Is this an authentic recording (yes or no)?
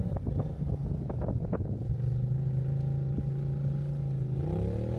yes